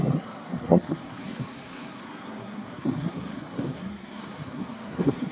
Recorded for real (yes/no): no